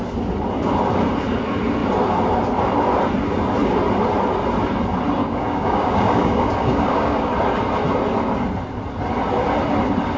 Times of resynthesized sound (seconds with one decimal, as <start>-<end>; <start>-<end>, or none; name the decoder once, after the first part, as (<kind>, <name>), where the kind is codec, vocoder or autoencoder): 5.2-7.3 (codec, DAC)